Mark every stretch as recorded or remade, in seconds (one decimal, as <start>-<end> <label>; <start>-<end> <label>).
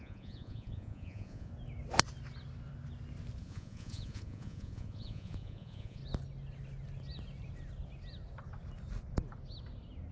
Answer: 0.0-1.5 remade; 1.5-3.4 recorded; 3.4-6.0 remade; 6.0-10.1 recorded